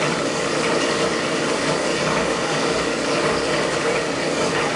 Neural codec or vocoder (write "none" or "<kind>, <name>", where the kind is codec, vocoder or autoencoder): codec, DAC